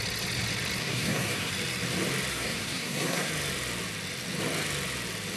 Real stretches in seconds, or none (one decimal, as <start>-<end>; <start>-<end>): 0.0-0.8; 1.5-2.3; 3.3-5.4